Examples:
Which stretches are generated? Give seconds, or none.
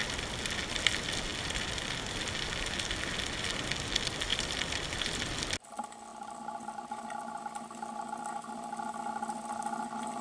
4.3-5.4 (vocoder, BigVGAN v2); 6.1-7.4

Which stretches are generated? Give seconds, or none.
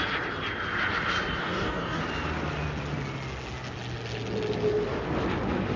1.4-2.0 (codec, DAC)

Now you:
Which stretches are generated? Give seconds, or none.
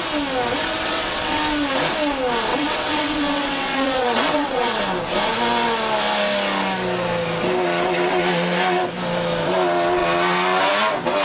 0.8-1.4 (vocoder, WaveNeXt); 2.5-4.8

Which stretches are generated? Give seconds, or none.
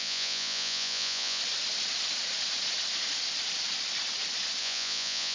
0.0-1.4 (vocoder, Vocos); 4.6-5.3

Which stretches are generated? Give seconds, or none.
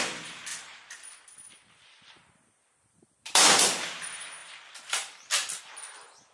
0.5-3.6 (vocoder, BigVGAN v2); 4.4-5.6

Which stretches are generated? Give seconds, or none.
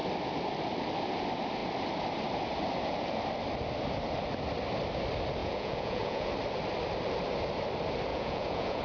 5.4-6.3 (vocoder, Vocos); 8.1-8.8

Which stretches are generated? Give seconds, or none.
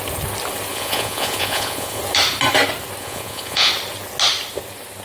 0.7-2.0 (vocoder, Vocos); 3.0-3.7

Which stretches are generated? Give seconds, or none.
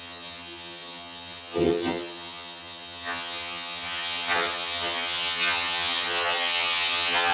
0.0-7.3 (vocoder, HiFi-GAN)